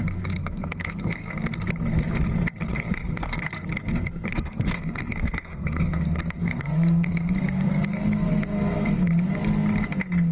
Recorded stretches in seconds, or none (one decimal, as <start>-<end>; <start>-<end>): 0.0-0.4; 1.3-2.7; 3.4-4.3; 9.1-10.3